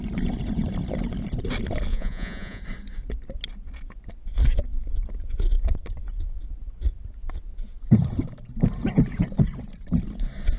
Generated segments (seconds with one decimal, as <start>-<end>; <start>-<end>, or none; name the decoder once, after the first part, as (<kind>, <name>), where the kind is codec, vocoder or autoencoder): 1.9-2.6 (vocoder, Vocos)